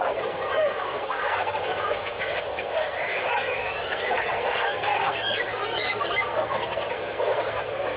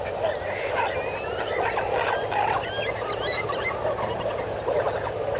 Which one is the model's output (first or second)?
first